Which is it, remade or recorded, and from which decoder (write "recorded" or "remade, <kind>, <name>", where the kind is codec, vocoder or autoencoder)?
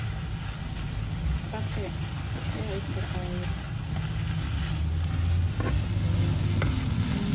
recorded